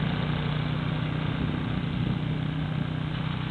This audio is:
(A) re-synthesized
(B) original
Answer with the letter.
B